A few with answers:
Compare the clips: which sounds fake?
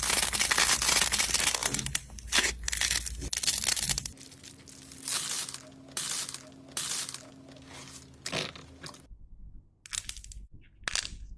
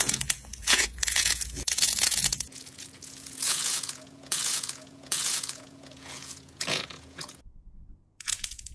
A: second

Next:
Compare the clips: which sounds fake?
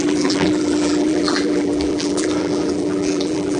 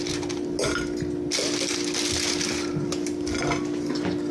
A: first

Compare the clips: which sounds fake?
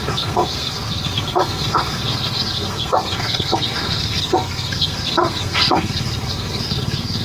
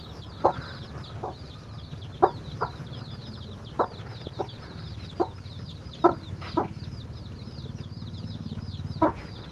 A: first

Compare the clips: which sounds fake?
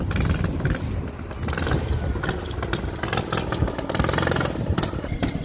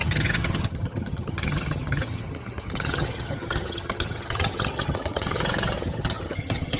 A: second